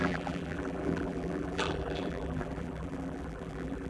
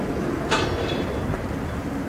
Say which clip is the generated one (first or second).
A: first